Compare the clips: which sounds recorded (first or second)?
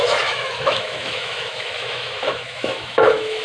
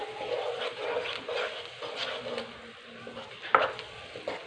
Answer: second